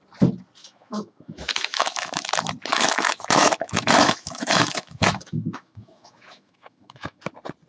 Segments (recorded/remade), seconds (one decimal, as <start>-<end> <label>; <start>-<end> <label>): 0.0-0.6 recorded; 0.6-2.3 remade; 2.3-2.7 recorded; 2.7-7.2 remade; 7.2-7.7 recorded